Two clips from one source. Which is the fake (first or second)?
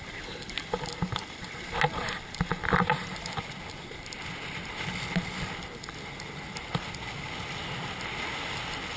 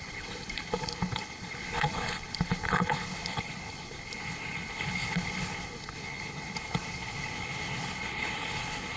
second